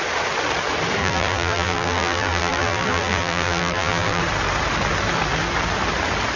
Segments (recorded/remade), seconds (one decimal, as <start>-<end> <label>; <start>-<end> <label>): 0.0-1.0 recorded; 1.0-4.2 remade; 4.2-6.4 recorded